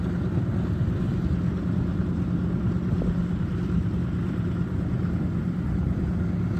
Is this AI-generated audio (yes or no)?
no